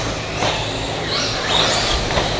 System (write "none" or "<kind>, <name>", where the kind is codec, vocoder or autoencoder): none